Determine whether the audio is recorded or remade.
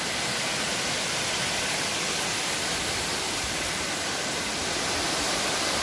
recorded